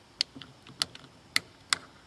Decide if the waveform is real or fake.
real